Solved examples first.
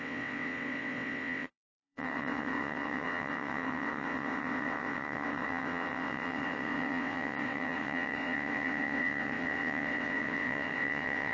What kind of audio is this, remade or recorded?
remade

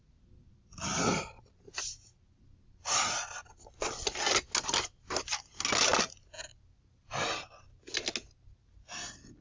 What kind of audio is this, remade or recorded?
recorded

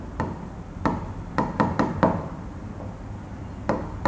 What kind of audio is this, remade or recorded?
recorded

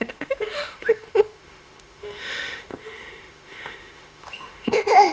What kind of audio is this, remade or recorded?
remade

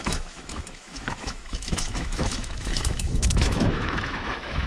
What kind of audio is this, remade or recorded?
remade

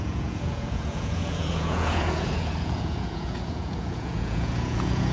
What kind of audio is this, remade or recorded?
remade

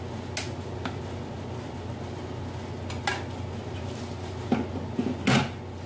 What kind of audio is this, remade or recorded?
recorded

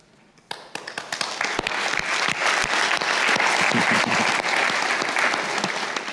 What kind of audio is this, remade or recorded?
recorded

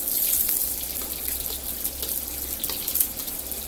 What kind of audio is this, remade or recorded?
recorded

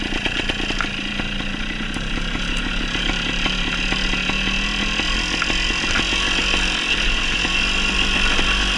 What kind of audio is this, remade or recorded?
recorded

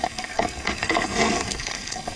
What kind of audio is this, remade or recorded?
remade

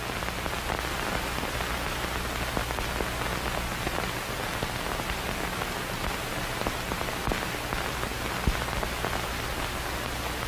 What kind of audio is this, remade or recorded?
recorded